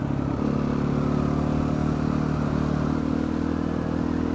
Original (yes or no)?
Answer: yes